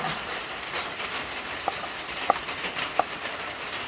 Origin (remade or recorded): remade